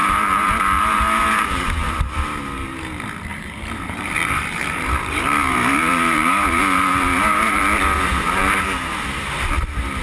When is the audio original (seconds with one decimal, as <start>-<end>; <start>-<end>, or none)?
2.4-3.3; 7.6-8.4; 9.4-10.0